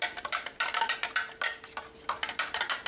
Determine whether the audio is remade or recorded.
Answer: recorded